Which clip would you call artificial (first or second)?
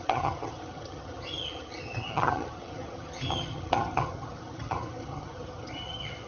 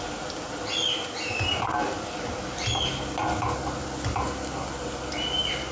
first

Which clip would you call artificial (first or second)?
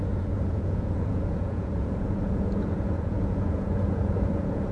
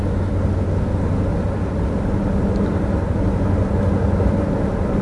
first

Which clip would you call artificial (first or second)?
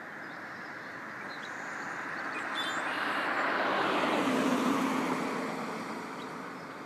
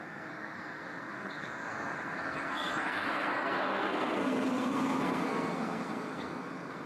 second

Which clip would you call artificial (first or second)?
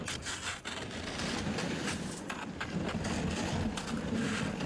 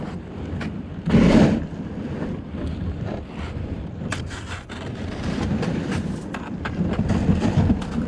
second